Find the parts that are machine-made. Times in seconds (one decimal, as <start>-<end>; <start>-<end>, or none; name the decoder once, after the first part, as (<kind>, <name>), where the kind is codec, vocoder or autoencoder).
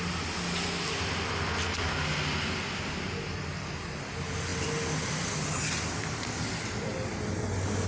none